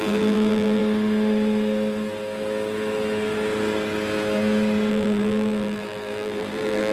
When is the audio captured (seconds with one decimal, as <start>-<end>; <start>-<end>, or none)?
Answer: 0.8-4.9